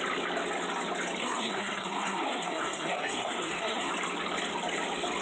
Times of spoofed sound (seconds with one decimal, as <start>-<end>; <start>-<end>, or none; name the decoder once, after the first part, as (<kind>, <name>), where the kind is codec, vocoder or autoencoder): 1.2-3.9 (codec, SNAC)